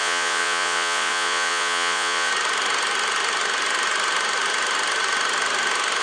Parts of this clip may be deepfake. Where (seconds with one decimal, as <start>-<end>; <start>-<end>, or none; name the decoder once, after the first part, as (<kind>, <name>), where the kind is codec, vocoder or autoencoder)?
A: 0.0-2.3 (vocoder, Vocos)

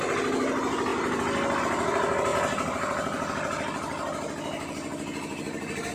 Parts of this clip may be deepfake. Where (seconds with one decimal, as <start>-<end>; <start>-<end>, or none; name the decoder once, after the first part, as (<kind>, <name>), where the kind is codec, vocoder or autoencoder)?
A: none

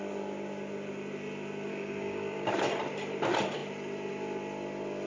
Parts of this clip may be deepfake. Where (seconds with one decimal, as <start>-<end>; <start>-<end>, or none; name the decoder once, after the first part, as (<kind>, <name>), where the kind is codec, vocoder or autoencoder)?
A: 1.7-2.5 (codec, DAC)

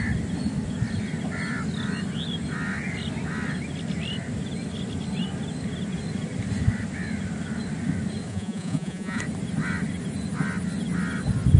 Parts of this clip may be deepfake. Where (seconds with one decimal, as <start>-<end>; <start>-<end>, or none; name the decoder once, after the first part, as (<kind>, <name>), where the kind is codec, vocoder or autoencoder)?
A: 8.3-9.2 (vocoder, Vocos)

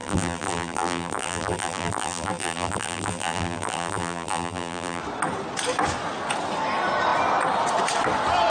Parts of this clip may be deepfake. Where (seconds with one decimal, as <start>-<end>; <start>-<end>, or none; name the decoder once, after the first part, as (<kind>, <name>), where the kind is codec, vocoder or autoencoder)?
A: 0.0-5.0 (vocoder, BigVGAN v2)

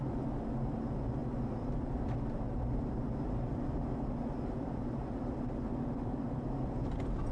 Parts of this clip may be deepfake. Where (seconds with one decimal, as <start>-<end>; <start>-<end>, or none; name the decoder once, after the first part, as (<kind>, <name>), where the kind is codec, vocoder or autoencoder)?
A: none